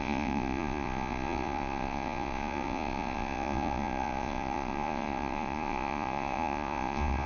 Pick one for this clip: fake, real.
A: fake